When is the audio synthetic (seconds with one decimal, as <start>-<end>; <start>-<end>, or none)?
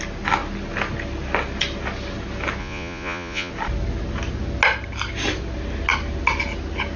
2.6-3.5